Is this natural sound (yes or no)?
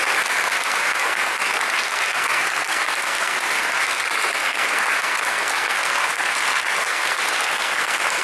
no